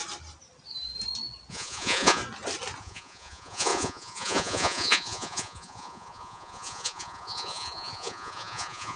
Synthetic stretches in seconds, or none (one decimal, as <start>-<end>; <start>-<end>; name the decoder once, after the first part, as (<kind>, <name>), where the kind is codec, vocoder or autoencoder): 1.5-2.2 (vocoder, Vocos); 2.8-9.0